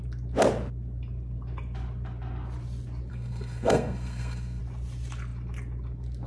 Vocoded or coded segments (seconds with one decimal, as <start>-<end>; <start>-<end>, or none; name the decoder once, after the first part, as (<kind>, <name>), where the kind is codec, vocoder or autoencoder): 3.1-4.6 (codec, SNAC)